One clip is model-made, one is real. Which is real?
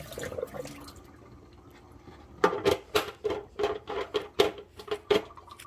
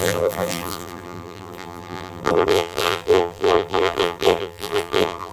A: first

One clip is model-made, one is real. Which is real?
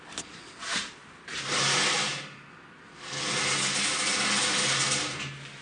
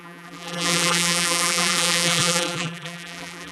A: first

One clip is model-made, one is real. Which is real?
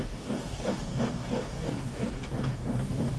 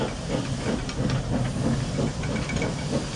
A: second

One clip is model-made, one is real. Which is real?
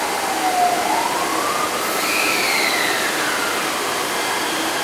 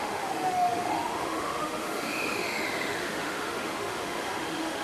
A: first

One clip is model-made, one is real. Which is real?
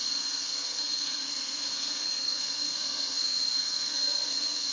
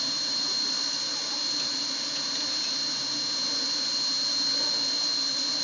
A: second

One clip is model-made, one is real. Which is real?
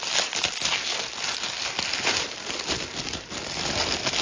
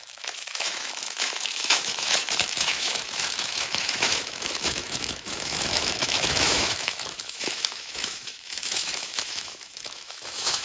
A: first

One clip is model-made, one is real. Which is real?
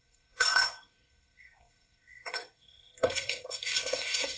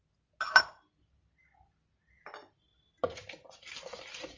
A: second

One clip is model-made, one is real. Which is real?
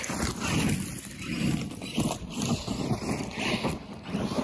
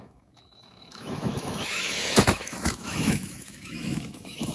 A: first